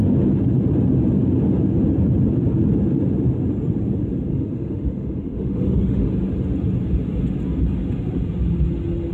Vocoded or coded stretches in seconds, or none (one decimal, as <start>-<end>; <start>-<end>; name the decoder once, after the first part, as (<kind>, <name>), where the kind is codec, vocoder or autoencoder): 4.3-6.1 (autoencoder, DAC-VAE)